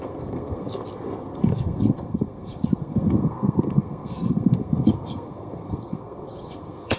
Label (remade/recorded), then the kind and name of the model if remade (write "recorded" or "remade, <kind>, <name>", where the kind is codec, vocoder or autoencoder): remade, codec, SNAC